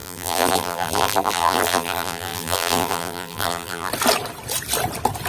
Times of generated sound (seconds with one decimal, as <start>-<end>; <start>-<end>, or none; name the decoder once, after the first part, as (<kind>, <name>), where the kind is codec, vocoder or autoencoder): 0.0-3.9 (vocoder, BigVGAN v2)